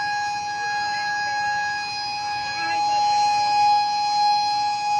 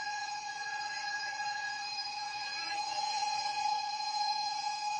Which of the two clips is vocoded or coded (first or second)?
second